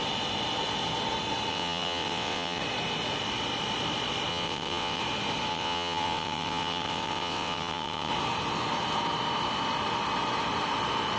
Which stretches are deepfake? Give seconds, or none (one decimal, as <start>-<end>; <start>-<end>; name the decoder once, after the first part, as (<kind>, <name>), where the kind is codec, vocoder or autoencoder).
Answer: 1.5-2.6 (vocoder, WaveNeXt); 4.3-5.0; 5.5-8.1